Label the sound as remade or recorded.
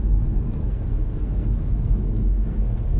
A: remade